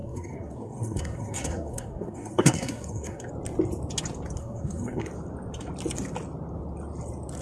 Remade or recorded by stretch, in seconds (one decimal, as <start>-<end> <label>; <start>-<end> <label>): 0.0-3.3 remade; 3.3-4.4 recorded; 4.4-5.0 remade; 5.0-7.4 recorded